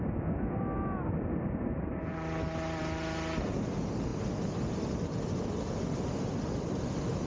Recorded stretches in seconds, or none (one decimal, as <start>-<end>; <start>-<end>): 0.0-7.3